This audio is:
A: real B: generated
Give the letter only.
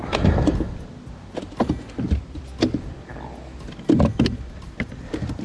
A